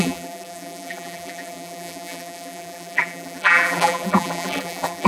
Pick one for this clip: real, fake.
fake